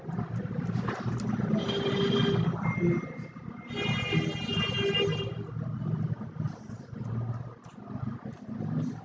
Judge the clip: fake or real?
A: real